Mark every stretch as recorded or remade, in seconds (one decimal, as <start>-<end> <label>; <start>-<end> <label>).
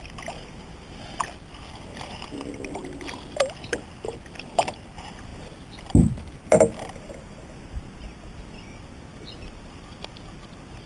0.0-5.3 recorded; 5.3-7.6 remade; 7.6-10.9 recorded